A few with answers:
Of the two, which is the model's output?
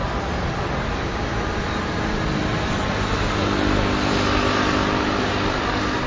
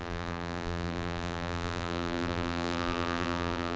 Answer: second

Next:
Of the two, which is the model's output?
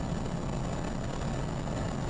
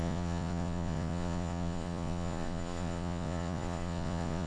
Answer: second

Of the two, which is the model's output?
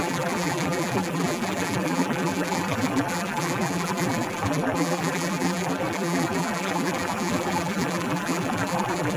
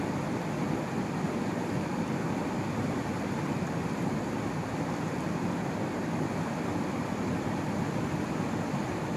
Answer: first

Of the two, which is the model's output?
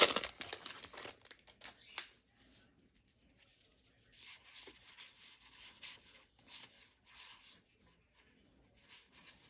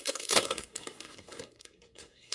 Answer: second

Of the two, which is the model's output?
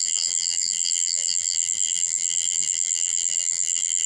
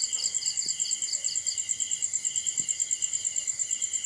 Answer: first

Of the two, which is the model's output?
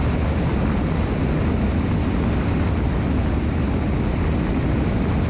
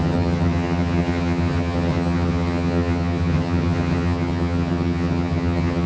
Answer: second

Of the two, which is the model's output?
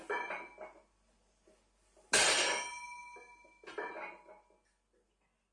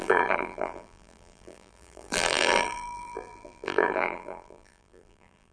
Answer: second